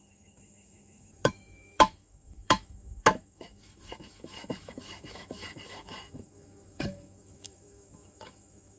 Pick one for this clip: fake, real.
fake